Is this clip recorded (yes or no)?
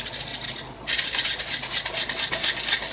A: yes